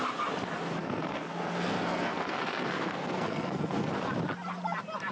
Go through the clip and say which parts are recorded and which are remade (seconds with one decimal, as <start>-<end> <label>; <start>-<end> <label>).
0.0-0.8 recorded; 0.8-3.9 remade; 3.9-5.1 recorded